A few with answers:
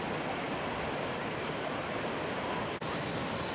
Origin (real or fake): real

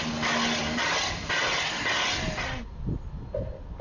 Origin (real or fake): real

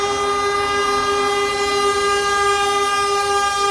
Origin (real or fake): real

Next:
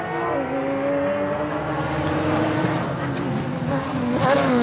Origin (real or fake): real